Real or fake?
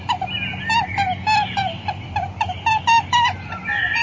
real